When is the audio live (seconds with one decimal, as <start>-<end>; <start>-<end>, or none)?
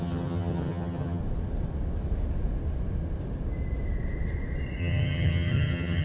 1.2-4.8